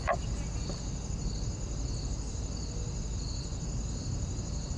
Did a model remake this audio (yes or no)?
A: no